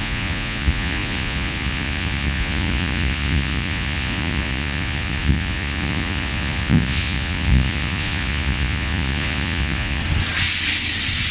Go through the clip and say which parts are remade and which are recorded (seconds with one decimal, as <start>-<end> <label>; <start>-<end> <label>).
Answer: 0.0-10.0 remade; 10.0-11.3 recorded